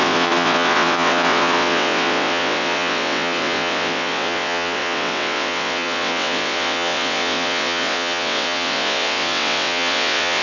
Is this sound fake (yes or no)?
yes